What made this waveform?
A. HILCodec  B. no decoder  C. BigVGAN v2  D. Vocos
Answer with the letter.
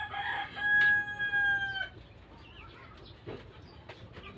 B